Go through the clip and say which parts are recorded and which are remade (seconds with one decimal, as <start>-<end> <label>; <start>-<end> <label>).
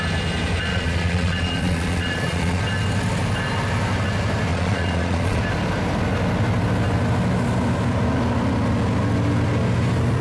0.0-0.7 recorded; 0.7-2.6 remade; 2.6-4.5 recorded; 4.5-5.4 remade; 5.4-10.2 recorded